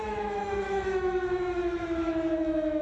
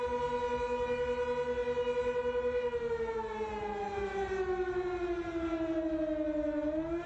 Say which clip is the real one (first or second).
second